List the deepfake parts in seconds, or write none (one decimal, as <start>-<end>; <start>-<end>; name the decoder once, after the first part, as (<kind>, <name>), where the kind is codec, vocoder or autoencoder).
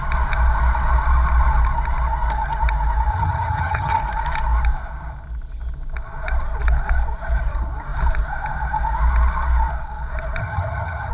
3.1-4.0 (vocoder, HiFi-GAN); 10.4-11.1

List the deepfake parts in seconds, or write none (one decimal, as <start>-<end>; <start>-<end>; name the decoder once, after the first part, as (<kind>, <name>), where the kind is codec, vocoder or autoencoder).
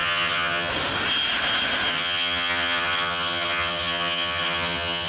0.0-0.7 (vocoder, HiFi-GAN); 1.9-5.1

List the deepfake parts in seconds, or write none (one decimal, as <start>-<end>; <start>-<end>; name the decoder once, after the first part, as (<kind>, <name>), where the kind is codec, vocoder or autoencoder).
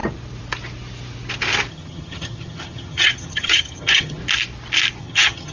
1.7-4.2 (vocoder, HiFi-GAN); 5.0-5.5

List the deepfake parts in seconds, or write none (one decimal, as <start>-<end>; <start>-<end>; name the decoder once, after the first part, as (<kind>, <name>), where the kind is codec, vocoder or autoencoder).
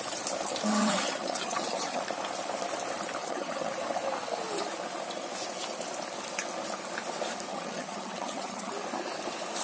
0.7-2.0 (vocoder, HiFi-GAN); 3.2-3.7; 7.5-8.7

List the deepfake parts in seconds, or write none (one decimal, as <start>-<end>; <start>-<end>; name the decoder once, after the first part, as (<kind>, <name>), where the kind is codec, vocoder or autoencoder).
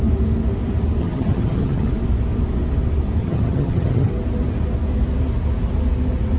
1.0-1.9 (vocoder, HiFi-GAN); 3.2-4.1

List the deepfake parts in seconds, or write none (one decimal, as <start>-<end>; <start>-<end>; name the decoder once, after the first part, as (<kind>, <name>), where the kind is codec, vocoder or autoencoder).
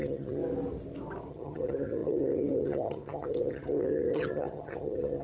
0.0-0.4 (vocoder, HiFi-GAN); 1.3-5.2